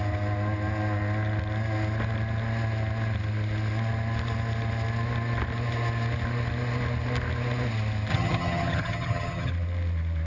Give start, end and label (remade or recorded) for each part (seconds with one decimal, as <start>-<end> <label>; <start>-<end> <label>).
0.0-8.1 recorded; 8.1-9.5 remade; 9.5-10.3 recorded